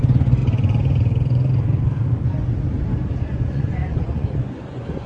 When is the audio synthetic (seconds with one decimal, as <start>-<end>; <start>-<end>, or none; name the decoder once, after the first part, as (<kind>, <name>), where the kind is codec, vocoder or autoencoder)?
0.0-0.4 (vocoder, Vocos); 3.2-5.1